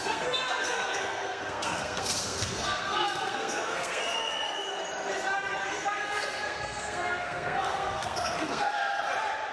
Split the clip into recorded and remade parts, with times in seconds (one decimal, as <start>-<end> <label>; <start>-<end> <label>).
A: 0.0-4.0 remade; 4.0-5.6 recorded; 5.6-9.0 remade; 9.0-9.5 recorded